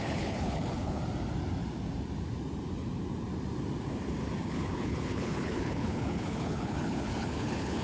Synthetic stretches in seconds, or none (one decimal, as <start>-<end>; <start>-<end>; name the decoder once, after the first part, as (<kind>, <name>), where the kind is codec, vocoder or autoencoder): 0.0-1.0 (codec, HILCodec); 4.4-7.8